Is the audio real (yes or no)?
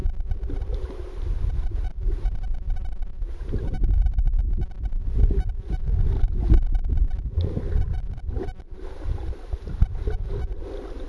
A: yes